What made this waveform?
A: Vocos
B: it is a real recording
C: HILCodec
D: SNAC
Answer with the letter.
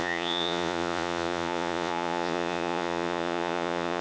A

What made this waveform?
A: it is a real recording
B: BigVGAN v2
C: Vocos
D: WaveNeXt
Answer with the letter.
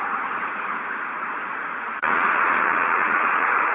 C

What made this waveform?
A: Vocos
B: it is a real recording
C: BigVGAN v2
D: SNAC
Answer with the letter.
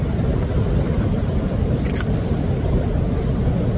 B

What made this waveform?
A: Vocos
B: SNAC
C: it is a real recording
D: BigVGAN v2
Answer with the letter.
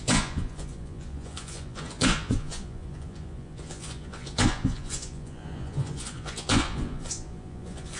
A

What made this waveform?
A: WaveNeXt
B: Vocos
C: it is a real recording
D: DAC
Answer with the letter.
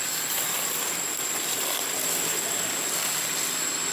C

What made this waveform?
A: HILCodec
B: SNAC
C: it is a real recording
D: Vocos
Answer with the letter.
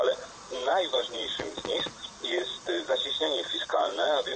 D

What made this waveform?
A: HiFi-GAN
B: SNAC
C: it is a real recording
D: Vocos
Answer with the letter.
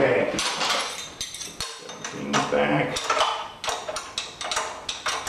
C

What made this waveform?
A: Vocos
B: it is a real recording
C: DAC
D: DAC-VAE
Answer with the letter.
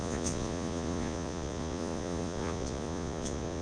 A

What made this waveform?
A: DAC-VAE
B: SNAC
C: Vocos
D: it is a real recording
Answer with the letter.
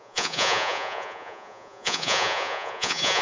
C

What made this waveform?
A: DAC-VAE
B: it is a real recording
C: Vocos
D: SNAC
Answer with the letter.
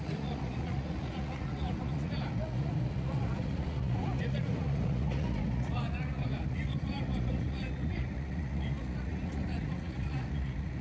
C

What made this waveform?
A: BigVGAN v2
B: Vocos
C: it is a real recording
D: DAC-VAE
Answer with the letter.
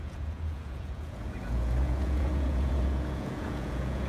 B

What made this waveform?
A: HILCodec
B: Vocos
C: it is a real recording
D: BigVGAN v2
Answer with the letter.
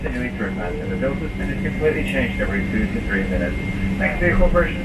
C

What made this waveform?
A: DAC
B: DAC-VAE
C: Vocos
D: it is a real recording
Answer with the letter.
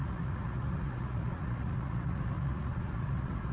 C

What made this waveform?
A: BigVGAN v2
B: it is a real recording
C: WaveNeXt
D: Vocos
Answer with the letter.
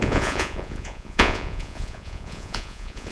D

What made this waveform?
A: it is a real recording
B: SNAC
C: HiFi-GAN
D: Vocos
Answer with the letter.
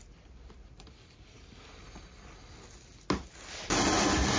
A